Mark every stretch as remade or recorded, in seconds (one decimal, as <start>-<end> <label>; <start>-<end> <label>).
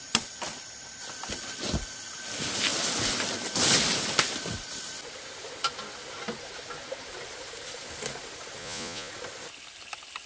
0.0-8.6 recorded; 8.6-9.1 remade; 9.1-10.3 recorded